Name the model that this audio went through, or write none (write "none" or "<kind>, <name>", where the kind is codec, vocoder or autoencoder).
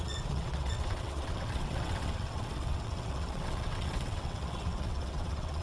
vocoder, WaveNeXt